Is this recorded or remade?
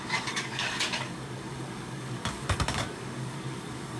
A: remade